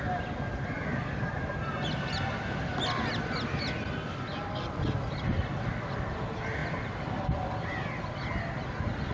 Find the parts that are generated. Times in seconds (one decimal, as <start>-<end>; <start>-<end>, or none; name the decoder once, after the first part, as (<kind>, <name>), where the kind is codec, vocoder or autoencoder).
6.6-7.2 (vocoder, BigVGAN v2)